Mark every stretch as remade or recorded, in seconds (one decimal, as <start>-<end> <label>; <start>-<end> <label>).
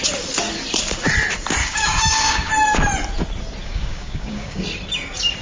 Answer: 0.0-1.6 recorded; 1.6-2.5 remade; 2.5-3.6 recorded; 3.6-4.6 remade; 4.6-5.4 recorded